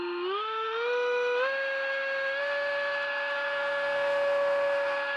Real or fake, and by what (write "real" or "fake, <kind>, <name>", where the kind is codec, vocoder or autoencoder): fake, autoencoder, DAC-VAE